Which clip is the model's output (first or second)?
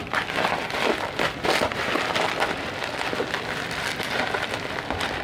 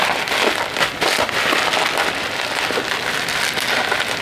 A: first